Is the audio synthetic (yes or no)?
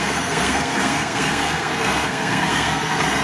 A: yes